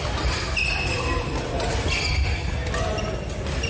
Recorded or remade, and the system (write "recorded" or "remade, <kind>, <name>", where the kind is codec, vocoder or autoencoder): recorded